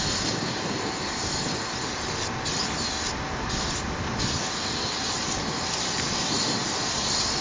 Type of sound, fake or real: real